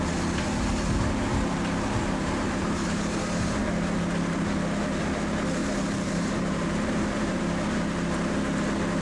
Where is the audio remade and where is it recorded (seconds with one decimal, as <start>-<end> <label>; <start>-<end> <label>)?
0.0-1.3 recorded; 1.3-3.2 remade; 3.2-5.6 recorded; 5.6-7.4 remade; 7.4-9.0 recorded